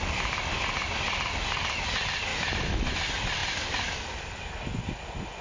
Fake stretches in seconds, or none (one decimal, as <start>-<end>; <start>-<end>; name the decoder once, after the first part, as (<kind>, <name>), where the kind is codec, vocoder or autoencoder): 2.3-2.9 (autoencoder, DAC-VAE)